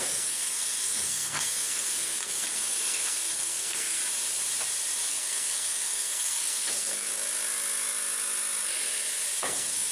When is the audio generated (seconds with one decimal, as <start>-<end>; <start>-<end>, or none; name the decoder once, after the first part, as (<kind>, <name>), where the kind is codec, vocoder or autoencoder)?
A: 0.0-4.0 (codec, SNAC); 5.1-7.1; 9.4-9.9